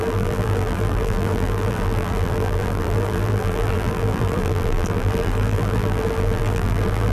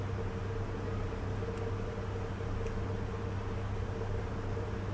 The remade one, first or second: first